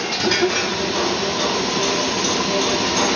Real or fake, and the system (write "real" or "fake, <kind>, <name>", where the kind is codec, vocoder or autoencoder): real